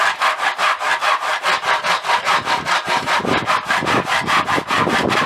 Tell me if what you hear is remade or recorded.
recorded